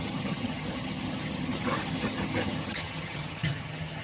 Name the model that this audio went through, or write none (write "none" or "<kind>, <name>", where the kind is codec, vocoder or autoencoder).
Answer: vocoder, HiFi-GAN